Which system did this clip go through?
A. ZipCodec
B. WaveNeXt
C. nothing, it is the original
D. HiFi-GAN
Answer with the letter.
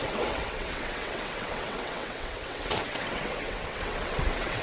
B